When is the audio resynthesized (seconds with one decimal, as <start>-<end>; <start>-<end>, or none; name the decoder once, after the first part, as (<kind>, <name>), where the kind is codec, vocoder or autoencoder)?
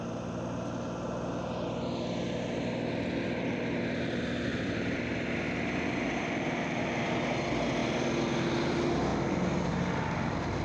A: 4.5-5.1 (vocoder, BigVGAN v2)